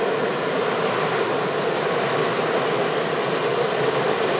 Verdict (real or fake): real